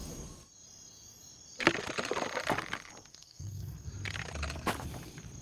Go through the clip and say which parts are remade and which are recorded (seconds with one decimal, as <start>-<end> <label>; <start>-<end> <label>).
0.0-3.1 recorded; 3.1-3.9 remade; 3.9-5.4 recorded